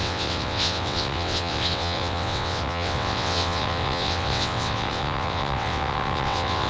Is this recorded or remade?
remade